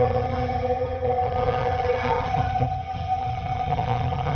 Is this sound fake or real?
fake